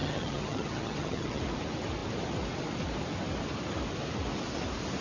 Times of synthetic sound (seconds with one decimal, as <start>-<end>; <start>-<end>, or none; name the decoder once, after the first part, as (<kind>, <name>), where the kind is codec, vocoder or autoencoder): 0.0-1.4 (vocoder, HiFi-GAN)

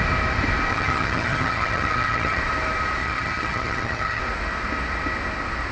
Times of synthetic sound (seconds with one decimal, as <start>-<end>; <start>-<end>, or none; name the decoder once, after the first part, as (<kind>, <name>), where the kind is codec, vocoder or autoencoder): 0.7-2.4 (vocoder, HiFi-GAN); 3.0-4.2

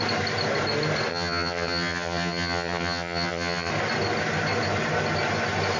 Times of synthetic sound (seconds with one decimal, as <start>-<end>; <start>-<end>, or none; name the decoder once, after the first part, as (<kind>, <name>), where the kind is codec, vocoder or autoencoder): 1.1-3.7 (vocoder, HiFi-GAN)

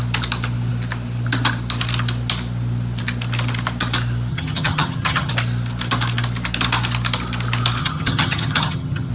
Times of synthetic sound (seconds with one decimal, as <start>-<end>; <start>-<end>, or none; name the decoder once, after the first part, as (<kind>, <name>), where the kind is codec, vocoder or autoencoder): 4.3-5.3 (vocoder, HiFi-GAN); 7.8-9.1

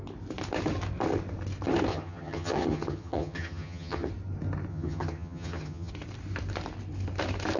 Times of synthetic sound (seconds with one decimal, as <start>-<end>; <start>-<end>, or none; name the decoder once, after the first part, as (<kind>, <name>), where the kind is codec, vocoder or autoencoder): 1.9-4.1 (vocoder, HiFi-GAN); 4.7-5.9

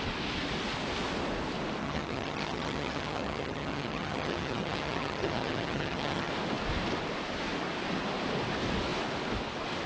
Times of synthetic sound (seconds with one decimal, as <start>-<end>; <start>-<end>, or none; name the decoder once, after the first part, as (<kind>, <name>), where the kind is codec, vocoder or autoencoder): 1.8-6.3 (vocoder, HiFi-GAN)

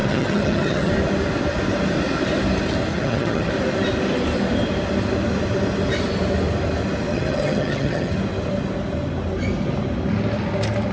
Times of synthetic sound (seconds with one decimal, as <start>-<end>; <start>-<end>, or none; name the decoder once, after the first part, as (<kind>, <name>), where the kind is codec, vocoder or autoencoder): 0.0-0.9 (vocoder, HiFi-GAN); 2.9-3.5; 7.1-8.1

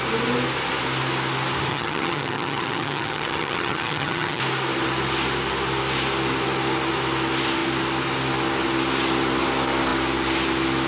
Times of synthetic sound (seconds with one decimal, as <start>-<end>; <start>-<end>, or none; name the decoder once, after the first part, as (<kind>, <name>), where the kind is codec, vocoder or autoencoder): 1.7-4.4 (vocoder, HiFi-GAN)